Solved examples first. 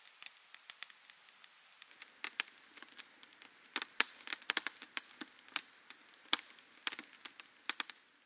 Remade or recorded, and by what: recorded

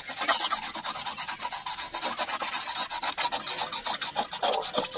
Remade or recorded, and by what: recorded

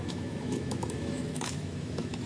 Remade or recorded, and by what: remade, autoencoder, DAC-VAE